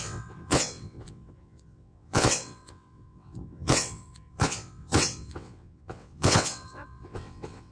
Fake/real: fake